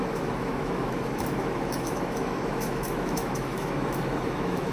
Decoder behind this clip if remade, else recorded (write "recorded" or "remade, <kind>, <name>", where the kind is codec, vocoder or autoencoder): remade, autoencoder, DAC-VAE